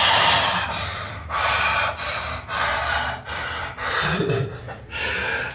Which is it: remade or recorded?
remade